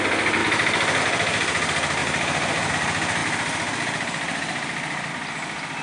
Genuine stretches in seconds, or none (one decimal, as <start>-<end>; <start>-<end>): 0.0-0.4; 1.0-2.0; 2.7-5.8